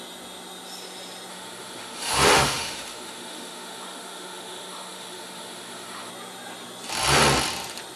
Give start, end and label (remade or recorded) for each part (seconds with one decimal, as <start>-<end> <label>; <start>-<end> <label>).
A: 0.0-1.3 recorded; 1.3-6.1 remade; 6.1-8.0 recorded

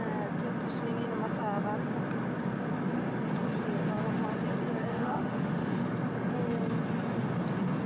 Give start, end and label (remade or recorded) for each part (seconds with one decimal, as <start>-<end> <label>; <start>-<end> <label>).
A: 0.0-4.9 recorded; 4.9-5.9 remade; 5.9-7.9 recorded

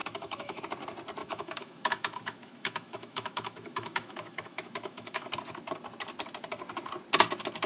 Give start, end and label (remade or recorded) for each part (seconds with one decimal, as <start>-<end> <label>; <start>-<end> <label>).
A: 0.0-0.6 remade; 0.6-1.2 recorded; 1.2-5.3 remade; 5.3-7.7 recorded

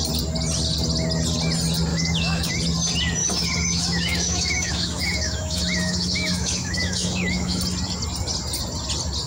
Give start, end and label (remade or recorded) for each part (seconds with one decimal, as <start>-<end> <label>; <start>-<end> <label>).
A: 0.0-1.9 recorded; 1.9-2.5 remade; 2.5-3.2 recorded; 3.2-7.6 remade; 7.6-9.3 recorded